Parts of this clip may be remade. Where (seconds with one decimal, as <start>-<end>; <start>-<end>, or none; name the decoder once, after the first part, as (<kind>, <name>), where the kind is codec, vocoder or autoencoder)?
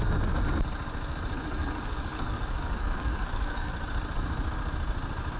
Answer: 1.6-3.7 (codec, DAC)